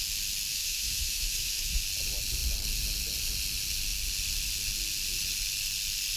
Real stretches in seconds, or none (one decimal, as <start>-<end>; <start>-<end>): 0.0-0.5; 1.8-6.2